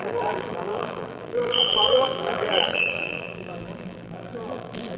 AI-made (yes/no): yes